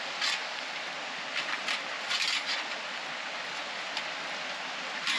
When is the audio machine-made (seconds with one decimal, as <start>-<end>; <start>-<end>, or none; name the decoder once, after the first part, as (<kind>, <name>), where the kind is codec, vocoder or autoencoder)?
none